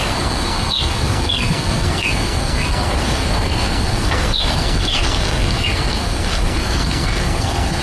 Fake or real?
fake